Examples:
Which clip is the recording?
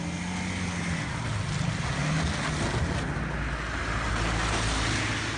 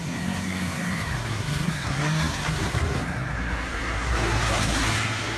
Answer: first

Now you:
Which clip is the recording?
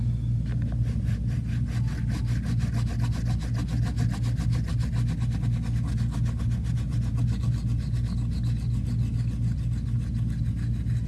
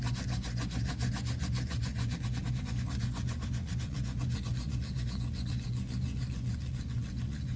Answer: first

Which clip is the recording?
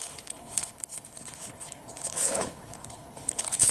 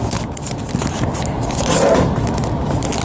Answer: second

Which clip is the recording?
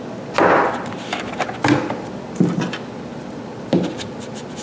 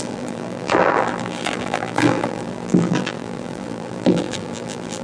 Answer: first